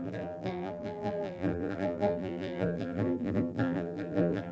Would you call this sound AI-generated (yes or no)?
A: yes